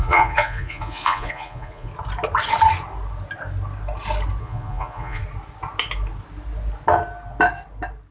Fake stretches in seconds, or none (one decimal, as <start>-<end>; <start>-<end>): 0.0-1.9; 4.4-5.2